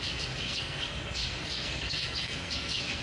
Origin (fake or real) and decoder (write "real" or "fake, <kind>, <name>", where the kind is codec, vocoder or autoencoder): fake, codec, SNAC